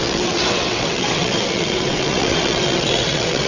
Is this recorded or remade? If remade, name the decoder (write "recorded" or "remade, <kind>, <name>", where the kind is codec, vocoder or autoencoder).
remade, vocoder, WaveNeXt